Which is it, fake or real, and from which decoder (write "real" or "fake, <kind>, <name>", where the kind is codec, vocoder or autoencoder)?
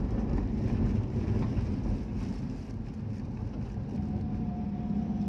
real